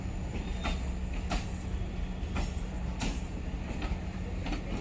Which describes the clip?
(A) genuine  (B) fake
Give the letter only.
A